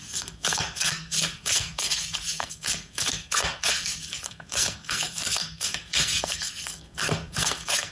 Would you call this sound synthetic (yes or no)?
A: yes